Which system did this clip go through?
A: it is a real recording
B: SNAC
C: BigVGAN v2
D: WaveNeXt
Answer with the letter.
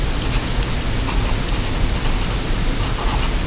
A